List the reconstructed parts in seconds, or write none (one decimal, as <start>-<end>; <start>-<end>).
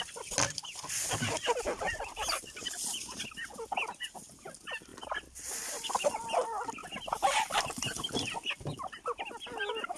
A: 6.8-7.6